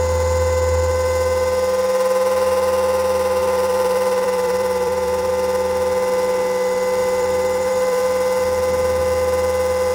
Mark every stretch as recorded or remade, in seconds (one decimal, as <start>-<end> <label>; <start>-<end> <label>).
0.0-3.4 recorded; 3.4-5.3 remade; 5.3-7.0 recorded; 7.0-8.0 remade; 8.0-9.9 recorded